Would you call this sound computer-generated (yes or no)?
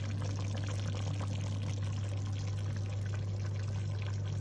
no